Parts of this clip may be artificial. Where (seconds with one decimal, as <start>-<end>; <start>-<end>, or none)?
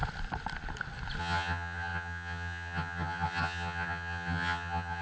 1.2-5.0